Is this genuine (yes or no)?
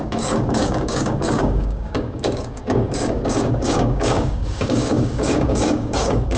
no